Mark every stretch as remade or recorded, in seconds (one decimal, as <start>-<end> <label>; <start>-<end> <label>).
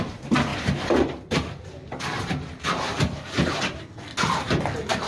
0.0-0.5 recorded; 0.5-3.6 remade; 3.6-5.1 recorded